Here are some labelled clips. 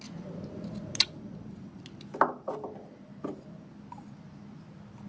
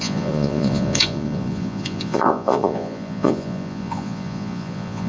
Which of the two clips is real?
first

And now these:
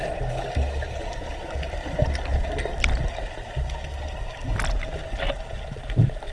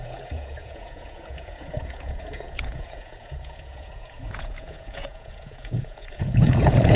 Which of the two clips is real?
first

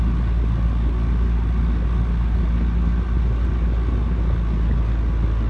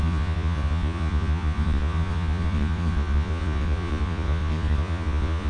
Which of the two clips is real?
first